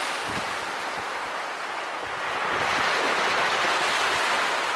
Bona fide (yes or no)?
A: yes